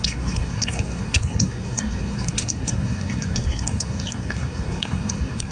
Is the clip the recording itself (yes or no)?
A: no